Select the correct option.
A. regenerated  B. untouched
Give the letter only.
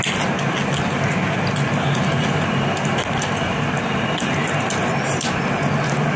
B